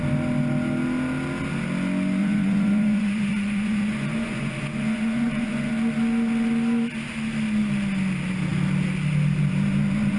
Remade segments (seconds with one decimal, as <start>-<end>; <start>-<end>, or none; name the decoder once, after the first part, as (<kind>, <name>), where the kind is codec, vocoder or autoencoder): 2.2-5.7 (vocoder, Vocos)